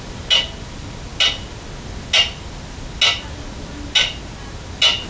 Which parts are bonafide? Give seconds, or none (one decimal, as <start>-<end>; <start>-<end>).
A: 0.0-5.1